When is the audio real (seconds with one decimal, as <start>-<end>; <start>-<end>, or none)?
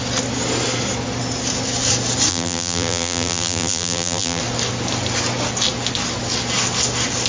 0.0-2.3; 4.4-7.3